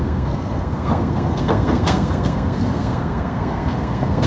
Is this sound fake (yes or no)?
yes